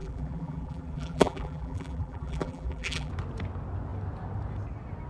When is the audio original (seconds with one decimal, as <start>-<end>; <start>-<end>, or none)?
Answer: 3.1-5.1